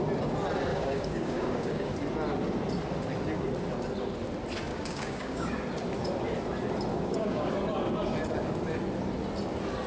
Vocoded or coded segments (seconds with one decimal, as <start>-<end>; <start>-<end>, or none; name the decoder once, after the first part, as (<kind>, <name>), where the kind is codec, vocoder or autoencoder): 0.7-1.9 (codec, DAC); 4.7-5.5; 6.9-7.5